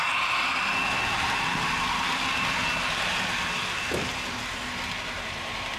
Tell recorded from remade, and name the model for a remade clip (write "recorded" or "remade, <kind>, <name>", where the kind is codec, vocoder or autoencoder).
recorded